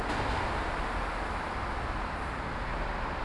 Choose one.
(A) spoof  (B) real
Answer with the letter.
B